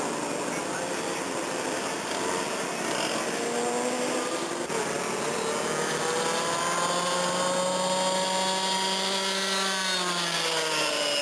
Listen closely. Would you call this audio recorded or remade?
recorded